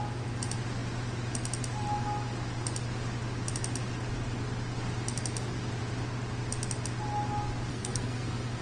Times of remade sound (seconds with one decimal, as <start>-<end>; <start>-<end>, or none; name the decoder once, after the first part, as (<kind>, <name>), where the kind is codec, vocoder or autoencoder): 7.7-8.6 (codec, SNAC)